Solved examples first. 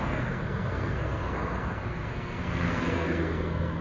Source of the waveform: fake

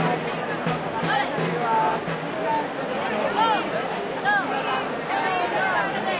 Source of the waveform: real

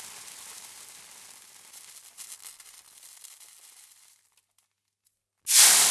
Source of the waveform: real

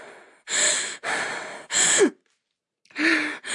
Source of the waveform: real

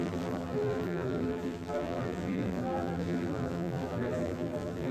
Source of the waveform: fake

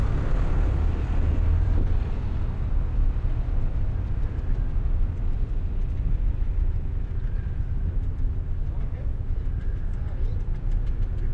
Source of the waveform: fake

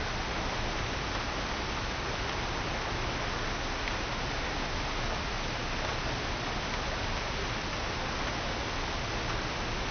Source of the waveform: real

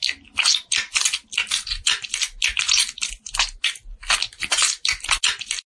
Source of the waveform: real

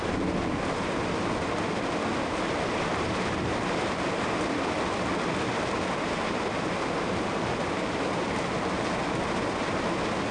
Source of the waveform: real